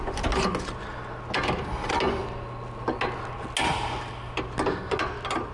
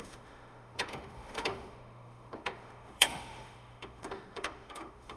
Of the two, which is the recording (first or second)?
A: first